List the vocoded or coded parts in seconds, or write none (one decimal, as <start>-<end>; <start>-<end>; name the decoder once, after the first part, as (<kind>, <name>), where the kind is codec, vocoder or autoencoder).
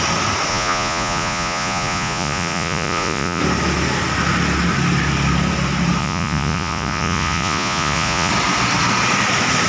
0.5-3.4 (vocoder, Vocos); 6.0-8.3